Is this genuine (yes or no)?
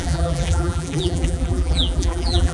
no